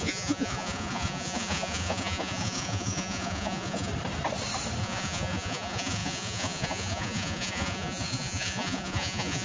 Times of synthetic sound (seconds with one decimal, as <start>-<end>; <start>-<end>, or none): 0.0-3.9; 4.8-9.4